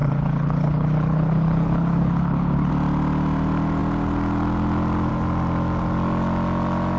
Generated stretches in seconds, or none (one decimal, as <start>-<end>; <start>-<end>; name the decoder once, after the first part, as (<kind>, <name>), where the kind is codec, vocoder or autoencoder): 0.0-2.7 (codec, HILCodec)